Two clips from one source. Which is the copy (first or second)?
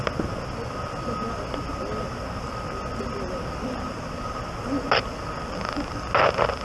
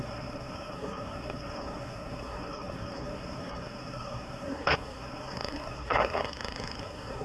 second